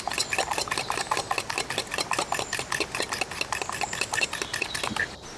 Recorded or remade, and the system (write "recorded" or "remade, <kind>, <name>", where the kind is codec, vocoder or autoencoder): recorded